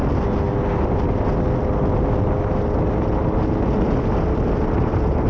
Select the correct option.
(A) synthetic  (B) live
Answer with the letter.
B